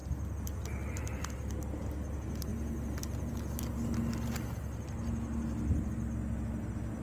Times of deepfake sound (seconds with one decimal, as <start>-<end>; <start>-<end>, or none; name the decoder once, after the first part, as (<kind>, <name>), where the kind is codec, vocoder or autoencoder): none